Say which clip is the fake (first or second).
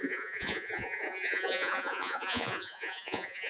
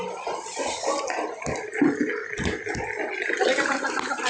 first